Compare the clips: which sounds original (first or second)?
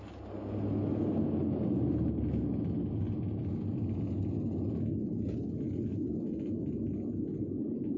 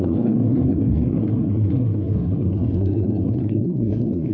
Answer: first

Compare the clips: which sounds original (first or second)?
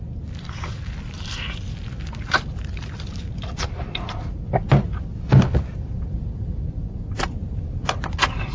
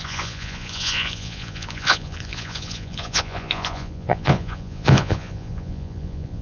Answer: first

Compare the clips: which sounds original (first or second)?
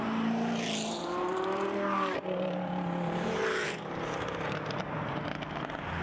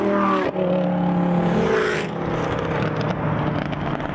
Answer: second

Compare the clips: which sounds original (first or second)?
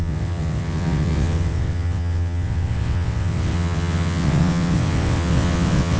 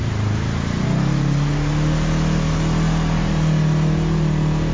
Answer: second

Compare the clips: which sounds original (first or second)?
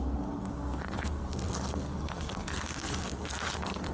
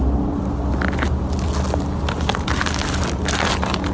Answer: second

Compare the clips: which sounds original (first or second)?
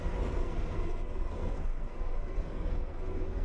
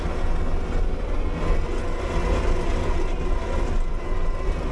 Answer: second